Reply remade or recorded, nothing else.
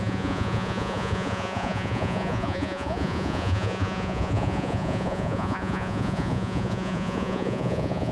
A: remade